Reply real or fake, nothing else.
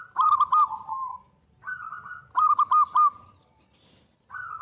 real